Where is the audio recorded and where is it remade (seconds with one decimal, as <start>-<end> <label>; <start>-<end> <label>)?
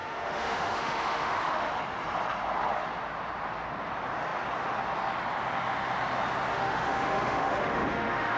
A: 0.0-1.7 remade; 1.7-6.5 recorded; 6.5-8.4 remade